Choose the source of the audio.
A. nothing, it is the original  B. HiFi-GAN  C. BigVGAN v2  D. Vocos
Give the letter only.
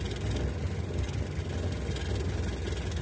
A